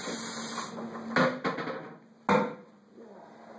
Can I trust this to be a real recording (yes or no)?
yes